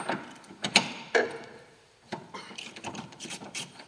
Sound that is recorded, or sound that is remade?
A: remade